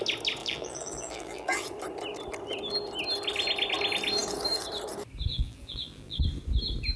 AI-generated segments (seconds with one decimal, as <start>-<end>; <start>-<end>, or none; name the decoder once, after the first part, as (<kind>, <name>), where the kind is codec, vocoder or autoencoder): 0.4-1.6 (vocoder, BigVGAN v2); 5.3-6.2